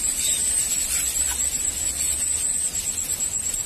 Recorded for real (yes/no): yes